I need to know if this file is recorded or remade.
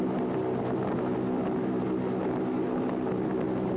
recorded